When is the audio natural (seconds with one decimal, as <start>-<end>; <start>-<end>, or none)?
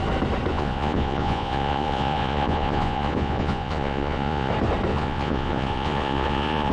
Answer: 0.0-0.5; 4.5-4.9